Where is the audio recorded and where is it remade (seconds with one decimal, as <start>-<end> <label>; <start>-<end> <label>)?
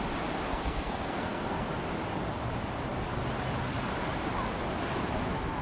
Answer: 0.0-0.5 recorded; 0.5-1.7 remade; 1.7-5.6 recorded